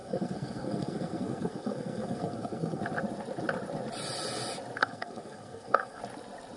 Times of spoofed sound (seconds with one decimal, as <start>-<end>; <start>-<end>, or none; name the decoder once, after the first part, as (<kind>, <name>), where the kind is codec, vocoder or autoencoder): 0.0-2.8 (codec, SNAC); 4.8-6.0